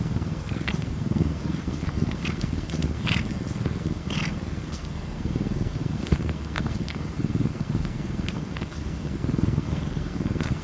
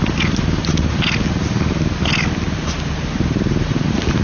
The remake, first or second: first